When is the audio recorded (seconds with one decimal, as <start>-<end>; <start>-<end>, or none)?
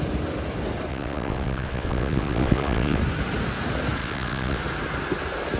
0.0-0.9; 3.0-4.0; 4.6-5.6